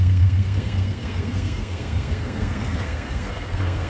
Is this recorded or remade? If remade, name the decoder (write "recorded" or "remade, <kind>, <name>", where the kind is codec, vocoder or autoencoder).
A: remade, codec, SNAC